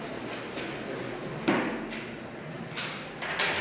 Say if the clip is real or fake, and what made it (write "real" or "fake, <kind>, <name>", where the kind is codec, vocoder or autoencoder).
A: real